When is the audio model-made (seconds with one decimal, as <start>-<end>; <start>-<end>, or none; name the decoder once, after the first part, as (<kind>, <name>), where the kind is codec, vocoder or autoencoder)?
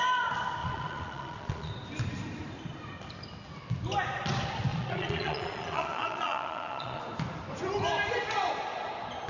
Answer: 0.6-1.7 (vocoder, Vocos); 4.7-7.0